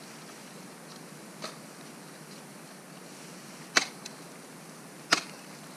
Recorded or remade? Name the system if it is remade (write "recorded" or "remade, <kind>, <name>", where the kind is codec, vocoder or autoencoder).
recorded